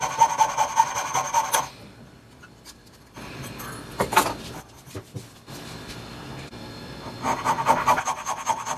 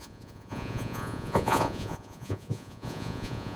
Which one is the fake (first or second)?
second